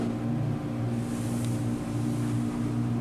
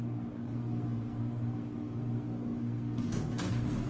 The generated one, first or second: second